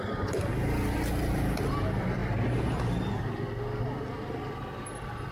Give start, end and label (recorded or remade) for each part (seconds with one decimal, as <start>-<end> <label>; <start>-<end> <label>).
0.0-5.3 recorded